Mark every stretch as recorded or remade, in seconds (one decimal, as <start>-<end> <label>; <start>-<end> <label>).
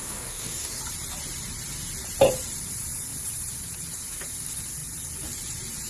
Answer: 0.0-0.8 remade; 0.8-5.9 recorded